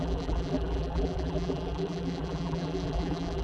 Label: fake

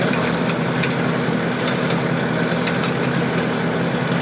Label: real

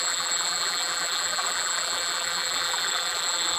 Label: fake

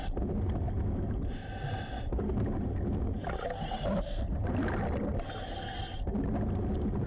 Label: real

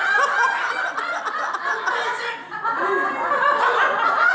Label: real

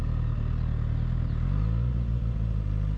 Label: real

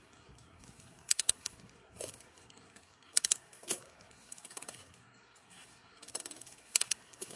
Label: fake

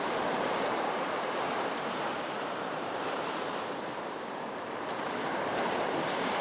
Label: fake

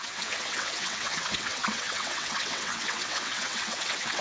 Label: fake